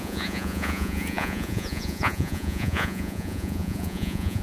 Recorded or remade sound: remade